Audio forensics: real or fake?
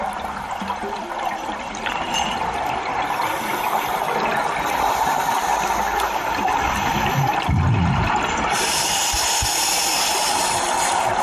real